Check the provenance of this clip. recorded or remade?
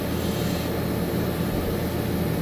recorded